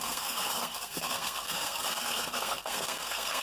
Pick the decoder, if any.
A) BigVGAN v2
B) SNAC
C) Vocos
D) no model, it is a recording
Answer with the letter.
B